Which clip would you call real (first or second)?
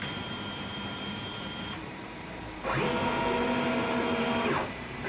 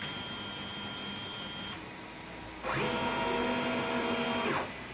second